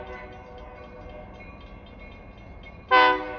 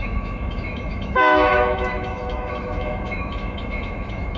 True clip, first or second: first